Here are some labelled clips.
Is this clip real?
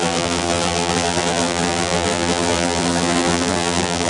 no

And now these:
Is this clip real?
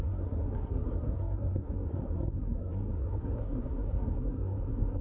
no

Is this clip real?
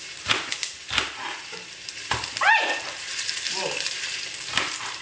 no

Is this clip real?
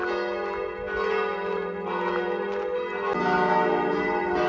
yes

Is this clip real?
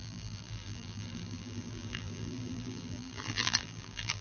no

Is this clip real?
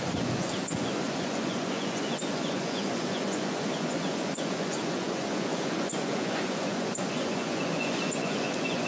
no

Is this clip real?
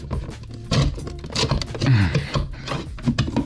yes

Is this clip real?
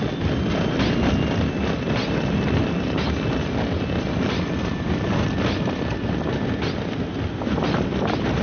yes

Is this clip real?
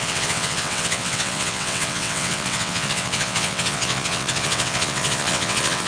no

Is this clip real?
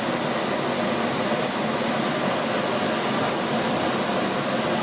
yes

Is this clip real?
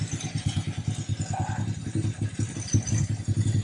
yes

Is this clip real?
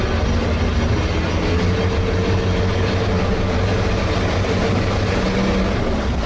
yes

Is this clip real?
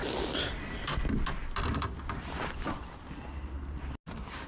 yes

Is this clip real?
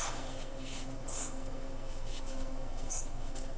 no